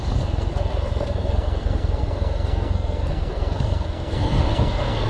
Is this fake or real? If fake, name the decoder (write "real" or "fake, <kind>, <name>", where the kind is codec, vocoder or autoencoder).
fake, codec, SNAC